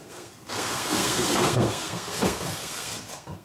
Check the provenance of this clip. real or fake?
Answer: fake